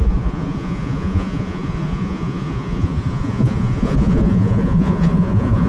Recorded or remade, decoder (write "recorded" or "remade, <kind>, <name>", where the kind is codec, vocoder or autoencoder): remade, vocoder, Vocos